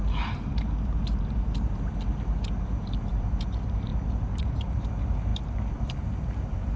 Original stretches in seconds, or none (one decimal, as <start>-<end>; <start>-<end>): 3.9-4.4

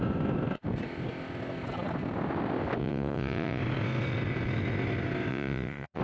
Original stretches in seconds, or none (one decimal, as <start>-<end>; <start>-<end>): 0.0-2.8; 3.6-5.3

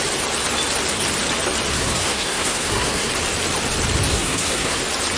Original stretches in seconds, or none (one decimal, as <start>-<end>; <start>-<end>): 0.0-1.7; 3.1-4.1; 4.8-5.2

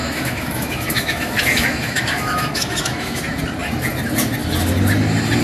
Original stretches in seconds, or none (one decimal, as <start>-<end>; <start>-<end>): 3.2-5.4

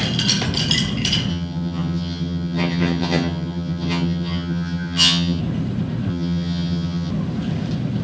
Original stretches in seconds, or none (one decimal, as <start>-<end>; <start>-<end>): 0.0-1.3; 5.4-6.1; 7.1-8.0